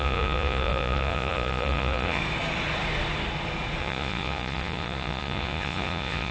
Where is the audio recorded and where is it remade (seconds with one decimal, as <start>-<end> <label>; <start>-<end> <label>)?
0.0-2.2 remade; 2.2-3.8 recorded; 3.8-6.3 remade